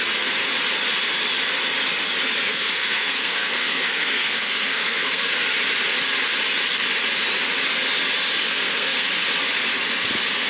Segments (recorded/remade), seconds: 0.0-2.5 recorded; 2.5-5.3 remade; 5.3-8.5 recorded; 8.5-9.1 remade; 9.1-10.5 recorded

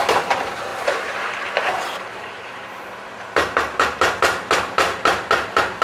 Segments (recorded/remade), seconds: 0.0-0.7 recorded; 0.7-4.2 remade; 4.2-5.8 recorded

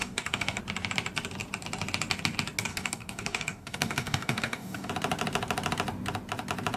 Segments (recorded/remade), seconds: 0.0-0.6 remade; 0.6-2.7 recorded; 2.7-4.9 remade; 4.9-6.8 recorded

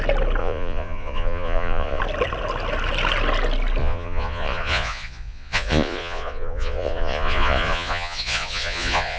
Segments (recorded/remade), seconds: 0.0-0.4 recorded; 0.4-2.0 remade; 2.0-3.8 recorded; 3.8-9.2 remade

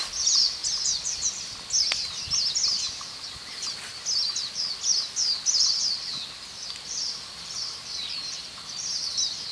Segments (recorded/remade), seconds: 0.0-9.5 recorded

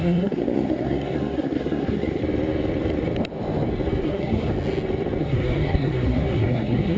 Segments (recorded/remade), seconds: 0.0-2.2 remade; 2.2-4.0 recorded; 4.0-4.5 remade; 4.5-5.2 recorded; 5.2-7.0 remade